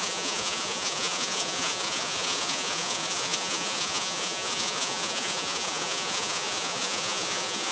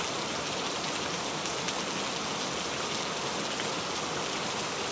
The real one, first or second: second